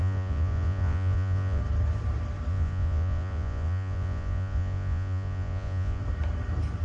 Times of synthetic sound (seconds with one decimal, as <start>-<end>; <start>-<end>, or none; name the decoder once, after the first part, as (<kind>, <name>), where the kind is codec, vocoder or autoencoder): 0.0-1.6 (vocoder, Vocos); 2.5-6.0